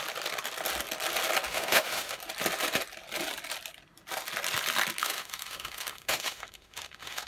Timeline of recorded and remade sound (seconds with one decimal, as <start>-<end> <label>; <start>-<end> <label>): 0.0-1.5 recorded; 1.5-2.2 remade; 2.2-5.0 recorded; 5.0-7.3 remade